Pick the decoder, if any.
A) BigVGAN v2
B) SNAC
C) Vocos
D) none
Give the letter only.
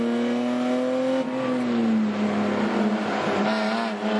D